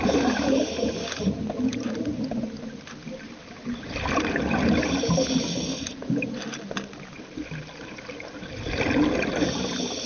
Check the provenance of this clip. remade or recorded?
recorded